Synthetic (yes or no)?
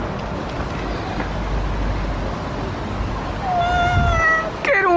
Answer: no